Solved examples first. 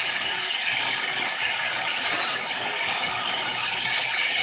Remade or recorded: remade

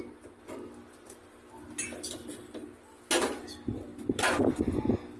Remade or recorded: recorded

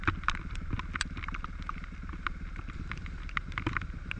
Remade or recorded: recorded